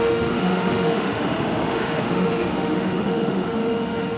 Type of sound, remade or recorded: remade